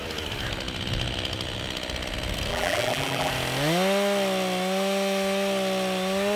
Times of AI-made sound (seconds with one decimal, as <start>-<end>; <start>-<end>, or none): 2.5-3.3

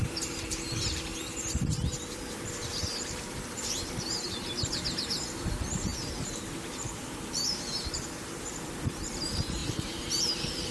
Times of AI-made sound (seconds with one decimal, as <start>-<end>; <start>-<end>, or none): 0.0-1.1; 2.7-10.7

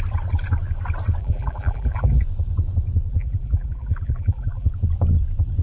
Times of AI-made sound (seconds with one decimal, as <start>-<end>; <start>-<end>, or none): 1.2-2.2; 3.1-4.7

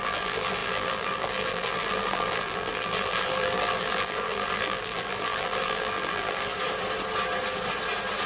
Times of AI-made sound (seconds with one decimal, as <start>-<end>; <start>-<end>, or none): 0.0-6.5

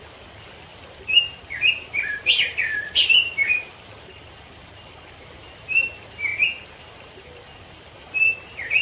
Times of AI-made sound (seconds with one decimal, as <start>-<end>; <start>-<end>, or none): 0.0-6.3; 6.8-8.8

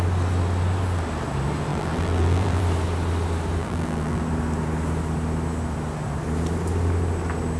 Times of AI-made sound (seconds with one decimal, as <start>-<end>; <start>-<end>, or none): 1.7-2.6; 3.6-4.2

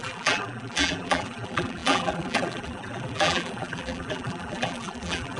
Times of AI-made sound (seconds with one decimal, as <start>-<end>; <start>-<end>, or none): 0.0-5.4